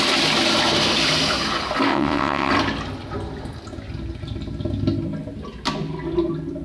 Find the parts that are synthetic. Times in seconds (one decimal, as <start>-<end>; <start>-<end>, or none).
1.9-2.5